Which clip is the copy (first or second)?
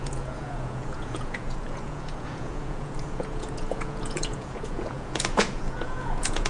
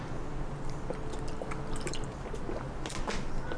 first